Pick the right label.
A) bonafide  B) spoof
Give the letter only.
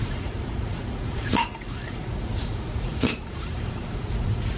B